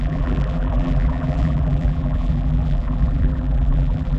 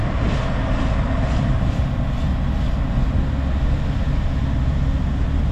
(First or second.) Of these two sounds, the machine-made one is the first